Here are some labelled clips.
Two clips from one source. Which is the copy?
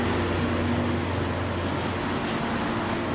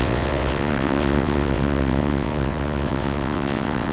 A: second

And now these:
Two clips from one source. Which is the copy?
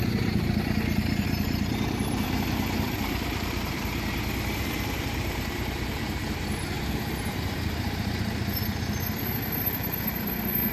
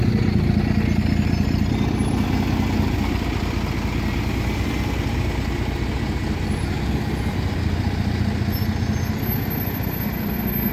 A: first